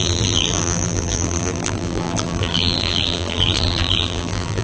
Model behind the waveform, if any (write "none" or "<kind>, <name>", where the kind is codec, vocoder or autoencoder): vocoder, BigVGAN v2